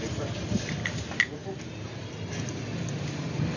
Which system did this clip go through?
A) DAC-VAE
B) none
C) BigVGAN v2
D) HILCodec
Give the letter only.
B